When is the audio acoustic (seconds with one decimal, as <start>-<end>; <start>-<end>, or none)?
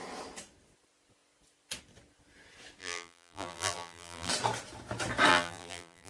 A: 0.0-2.8; 4.3-5.3